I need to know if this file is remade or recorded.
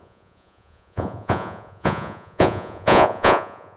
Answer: remade